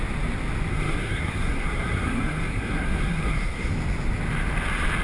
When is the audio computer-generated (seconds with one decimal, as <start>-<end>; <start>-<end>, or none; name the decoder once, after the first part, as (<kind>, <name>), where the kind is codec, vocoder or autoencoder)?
0.7-3.7 (codec, SNAC)